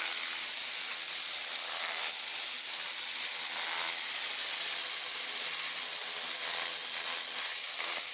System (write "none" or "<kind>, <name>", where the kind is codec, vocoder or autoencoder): none